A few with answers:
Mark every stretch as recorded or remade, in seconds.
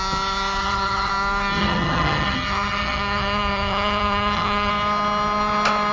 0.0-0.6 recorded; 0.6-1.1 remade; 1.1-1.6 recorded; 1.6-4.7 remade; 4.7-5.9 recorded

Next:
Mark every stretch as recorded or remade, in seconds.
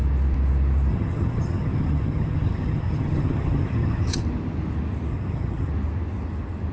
0.0-0.9 recorded; 0.9-4.2 remade; 4.2-5.1 recorded; 5.1-5.7 remade; 5.7-6.7 recorded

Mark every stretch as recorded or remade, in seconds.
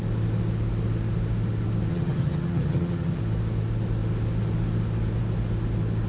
0.0-1.9 recorded; 1.9-3.2 remade; 3.2-6.1 recorded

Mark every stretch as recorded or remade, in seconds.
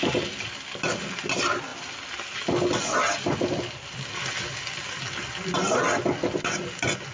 0.0-7.1 recorded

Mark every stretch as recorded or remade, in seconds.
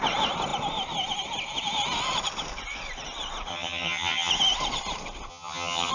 0.0-3.5 recorded; 3.5-4.3 remade; 4.3-5.3 recorded; 5.3-5.9 remade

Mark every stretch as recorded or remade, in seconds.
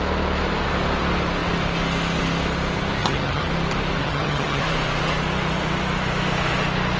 0.0-3.0 recorded; 3.0-3.5 remade; 3.5-4.0 recorded; 4.0-4.6 remade; 4.6-7.0 recorded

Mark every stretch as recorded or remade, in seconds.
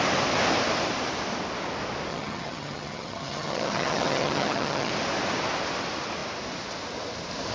0.0-2.1 recorded; 2.1-4.9 remade; 4.9-7.5 recorded